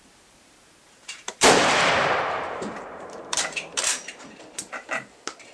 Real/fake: fake